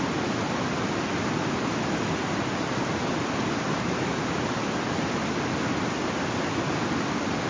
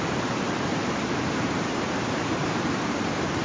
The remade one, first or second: second